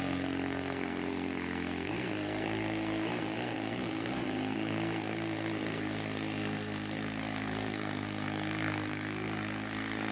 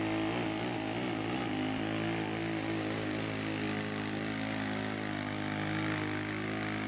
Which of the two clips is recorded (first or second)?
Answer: second